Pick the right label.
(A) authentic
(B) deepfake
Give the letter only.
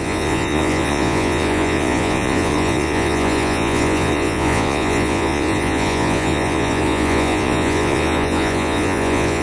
B